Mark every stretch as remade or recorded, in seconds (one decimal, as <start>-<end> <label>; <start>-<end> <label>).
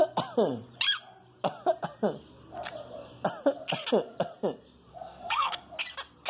0.0-4.9 recorded; 4.9-5.6 remade; 5.6-6.3 recorded